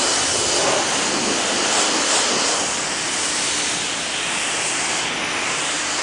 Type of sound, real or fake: real